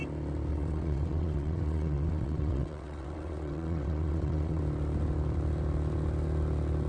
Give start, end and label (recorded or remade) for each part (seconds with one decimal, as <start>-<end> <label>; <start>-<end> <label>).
0.0-0.5 recorded; 0.5-4.6 remade; 4.6-6.9 recorded